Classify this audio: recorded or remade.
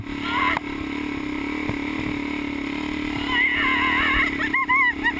recorded